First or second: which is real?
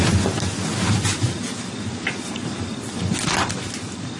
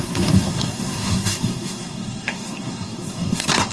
first